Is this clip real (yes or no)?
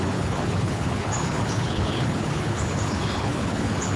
no